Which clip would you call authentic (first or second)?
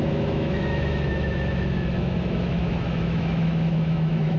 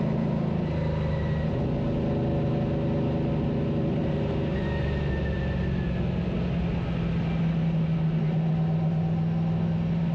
second